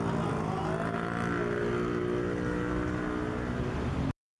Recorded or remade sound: recorded